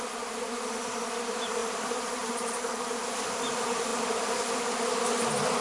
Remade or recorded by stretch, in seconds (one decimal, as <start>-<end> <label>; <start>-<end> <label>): 0.0-1.6 recorded; 1.6-2.9 remade; 2.9-5.6 recorded